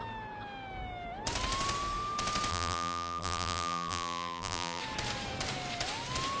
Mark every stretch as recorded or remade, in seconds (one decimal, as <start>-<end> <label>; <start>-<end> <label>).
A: 0.0-2.5 recorded; 2.5-4.8 remade; 4.8-6.4 recorded